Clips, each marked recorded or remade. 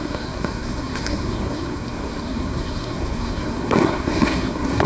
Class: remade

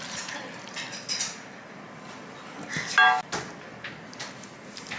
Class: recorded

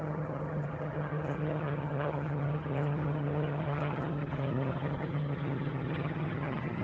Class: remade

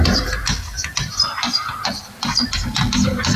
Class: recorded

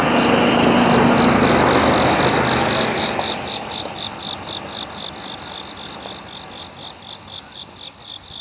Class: recorded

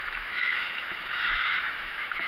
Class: remade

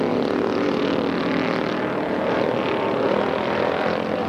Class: recorded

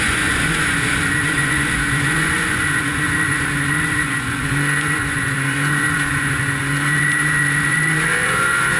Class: remade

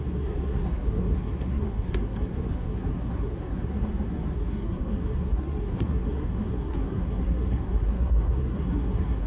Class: remade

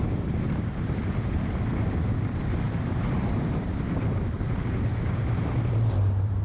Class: remade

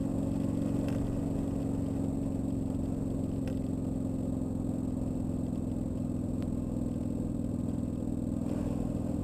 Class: recorded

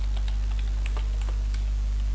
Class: recorded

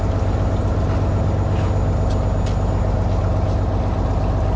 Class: recorded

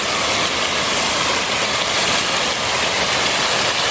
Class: recorded